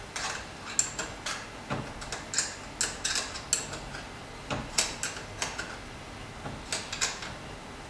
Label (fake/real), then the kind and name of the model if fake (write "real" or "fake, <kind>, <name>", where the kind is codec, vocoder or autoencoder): real